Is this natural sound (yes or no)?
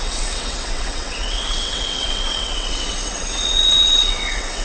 no